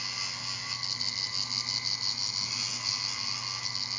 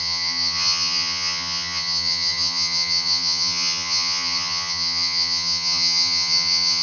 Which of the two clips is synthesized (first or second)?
second